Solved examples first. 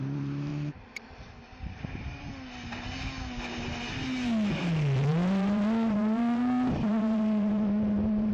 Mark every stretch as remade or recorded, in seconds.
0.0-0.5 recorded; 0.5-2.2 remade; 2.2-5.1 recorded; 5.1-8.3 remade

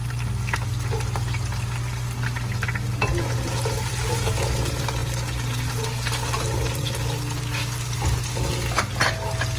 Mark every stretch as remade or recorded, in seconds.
0.0-9.6 recorded

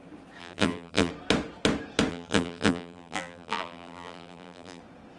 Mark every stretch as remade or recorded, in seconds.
0.0-0.4 recorded; 0.4-1.1 remade; 1.1-2.1 recorded; 2.1-4.8 remade; 4.8-5.2 recorded

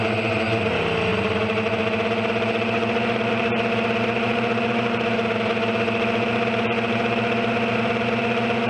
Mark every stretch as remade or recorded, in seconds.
0.0-8.7 recorded

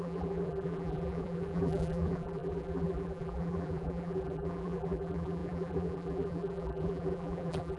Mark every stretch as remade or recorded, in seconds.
0.0-7.8 remade

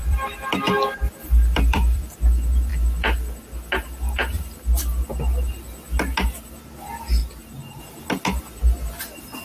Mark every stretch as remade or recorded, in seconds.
0.0-2.1 remade; 2.1-9.4 recorded